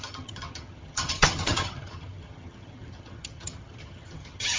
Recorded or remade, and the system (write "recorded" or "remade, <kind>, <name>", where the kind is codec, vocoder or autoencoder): remade, vocoder, HiFi-GAN